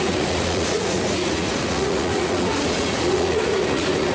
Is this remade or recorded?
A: remade